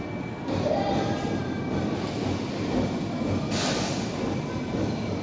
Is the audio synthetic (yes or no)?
no